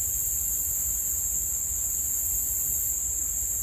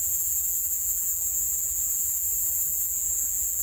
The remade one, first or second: second